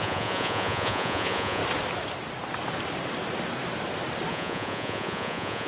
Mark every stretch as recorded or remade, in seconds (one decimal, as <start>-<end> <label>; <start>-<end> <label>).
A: 0.0-1.6 remade; 1.6-4.3 recorded; 4.3-5.7 remade